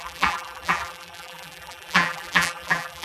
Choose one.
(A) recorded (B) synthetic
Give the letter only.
B